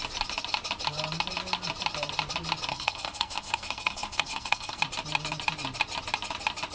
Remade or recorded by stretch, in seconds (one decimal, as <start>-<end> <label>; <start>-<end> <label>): 0.0-2.7 recorded; 2.7-4.8 remade; 4.8-6.7 recorded